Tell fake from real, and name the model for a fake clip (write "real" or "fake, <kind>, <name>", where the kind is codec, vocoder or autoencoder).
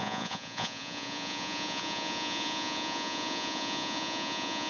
fake, vocoder, Vocos